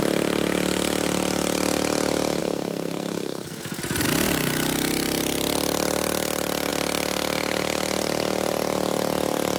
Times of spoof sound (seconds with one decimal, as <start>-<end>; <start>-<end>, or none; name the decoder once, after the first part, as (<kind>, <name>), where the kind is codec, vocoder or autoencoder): 2.4-3.8 (codec, SNAC)